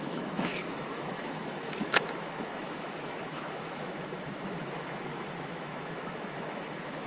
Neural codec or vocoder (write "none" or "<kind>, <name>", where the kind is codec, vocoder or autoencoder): autoencoder, DAC-VAE